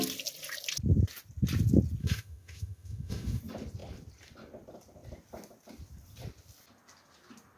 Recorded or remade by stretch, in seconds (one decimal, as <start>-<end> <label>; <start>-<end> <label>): 0.0-2.0 recorded; 2.0-3.4 remade; 3.4-7.6 recorded